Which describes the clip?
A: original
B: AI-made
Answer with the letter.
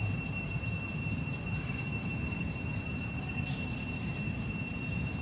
B